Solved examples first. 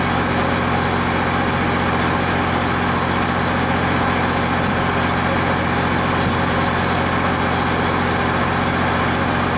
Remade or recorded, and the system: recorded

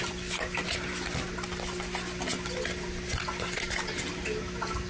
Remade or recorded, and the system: recorded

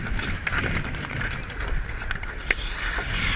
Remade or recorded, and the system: recorded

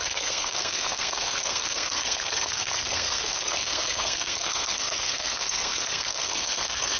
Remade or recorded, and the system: remade, codec, SNAC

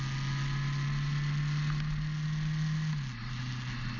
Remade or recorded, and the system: recorded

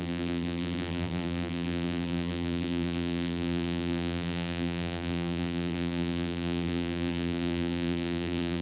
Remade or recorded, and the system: remade, vocoder, BigVGAN v2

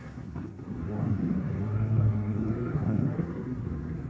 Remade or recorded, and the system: remade, codec, SNAC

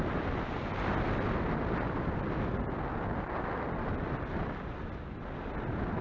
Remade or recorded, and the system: recorded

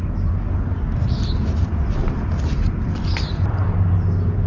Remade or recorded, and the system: recorded